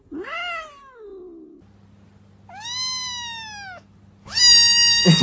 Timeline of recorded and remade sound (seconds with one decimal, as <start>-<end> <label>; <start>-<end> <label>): 0.0-5.2 recorded